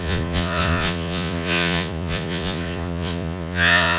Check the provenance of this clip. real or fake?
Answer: fake